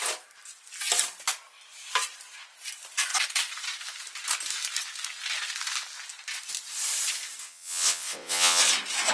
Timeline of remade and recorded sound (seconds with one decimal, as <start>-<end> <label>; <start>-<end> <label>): 0.0-7.4 recorded; 7.4-8.6 remade; 8.6-9.1 recorded